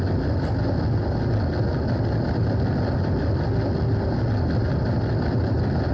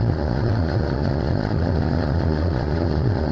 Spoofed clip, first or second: second